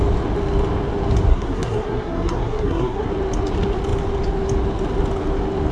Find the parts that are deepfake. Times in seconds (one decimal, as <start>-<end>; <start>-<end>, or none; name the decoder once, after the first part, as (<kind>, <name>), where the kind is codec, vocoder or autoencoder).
1.3-3.1 (codec, SNAC)

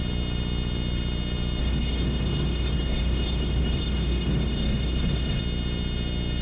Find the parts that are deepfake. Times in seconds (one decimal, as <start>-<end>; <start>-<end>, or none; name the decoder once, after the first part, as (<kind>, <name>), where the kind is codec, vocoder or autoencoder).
1.6-5.4 (codec, SNAC)

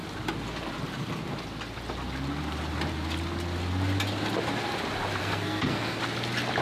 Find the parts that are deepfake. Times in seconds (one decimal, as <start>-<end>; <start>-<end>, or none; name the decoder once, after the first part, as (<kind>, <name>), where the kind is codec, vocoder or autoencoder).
5.2-6.0 (codec, SNAC)

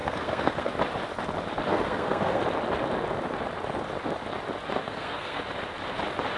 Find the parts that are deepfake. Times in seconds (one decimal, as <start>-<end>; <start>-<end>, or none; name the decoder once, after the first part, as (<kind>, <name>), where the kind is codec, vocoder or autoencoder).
0.0-0.7 (codec, SNAC); 1.7-2.4; 4.8-5.4

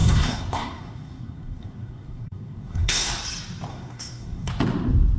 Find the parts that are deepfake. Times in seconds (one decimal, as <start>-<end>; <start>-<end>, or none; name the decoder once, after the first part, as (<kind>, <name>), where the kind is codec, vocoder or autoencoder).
0.0-3.1 (codec, SNAC); 3.7-4.5

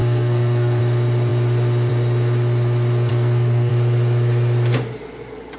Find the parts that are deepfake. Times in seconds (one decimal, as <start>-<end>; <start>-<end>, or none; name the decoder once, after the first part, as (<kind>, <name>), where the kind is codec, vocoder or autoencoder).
0.0-0.8 (codec, SNAC); 3.1-3.7